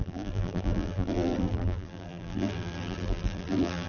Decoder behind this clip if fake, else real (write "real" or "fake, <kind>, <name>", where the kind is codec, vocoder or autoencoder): fake, vocoder, BigVGAN v2